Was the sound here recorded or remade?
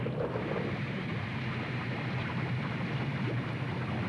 recorded